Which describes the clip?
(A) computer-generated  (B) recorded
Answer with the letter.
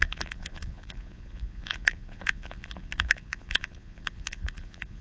A